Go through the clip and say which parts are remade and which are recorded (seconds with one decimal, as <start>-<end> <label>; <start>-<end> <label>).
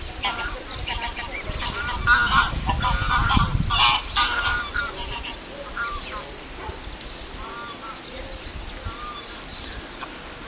0.0-10.5 recorded